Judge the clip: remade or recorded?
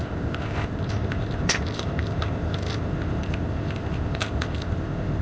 remade